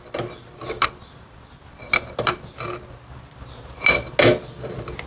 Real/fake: real